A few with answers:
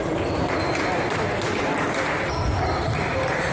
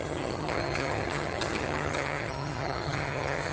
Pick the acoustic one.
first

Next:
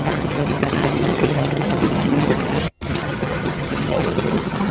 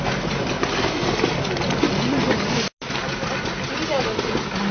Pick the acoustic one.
second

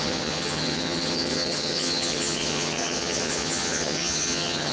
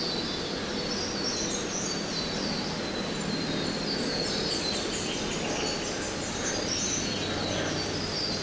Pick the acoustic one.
second